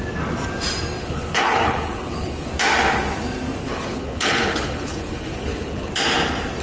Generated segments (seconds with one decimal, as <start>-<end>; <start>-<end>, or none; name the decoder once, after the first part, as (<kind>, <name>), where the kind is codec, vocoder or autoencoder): 1.0-2.5 (codec, HILCodec); 3.6-5.9